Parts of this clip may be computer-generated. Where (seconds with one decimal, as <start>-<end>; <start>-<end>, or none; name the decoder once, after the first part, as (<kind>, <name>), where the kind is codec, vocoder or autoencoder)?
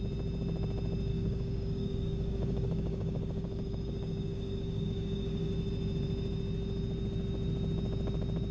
1.1-5.5 (codec, DAC)